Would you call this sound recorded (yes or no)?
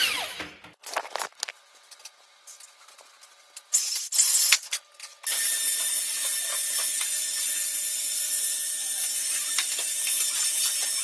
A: yes